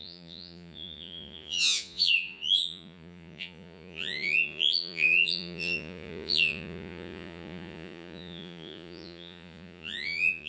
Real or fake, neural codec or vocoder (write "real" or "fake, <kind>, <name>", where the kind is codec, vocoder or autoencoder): fake, vocoder, Vocos